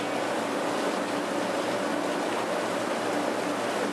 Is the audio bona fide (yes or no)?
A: yes